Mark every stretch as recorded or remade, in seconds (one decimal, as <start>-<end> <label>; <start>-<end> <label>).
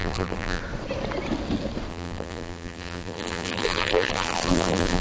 0.0-0.6 remade; 0.6-1.9 recorded; 1.9-5.0 remade